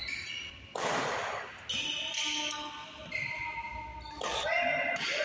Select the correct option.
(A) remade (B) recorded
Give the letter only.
B